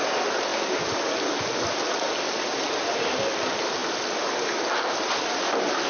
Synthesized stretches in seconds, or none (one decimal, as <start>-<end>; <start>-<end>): none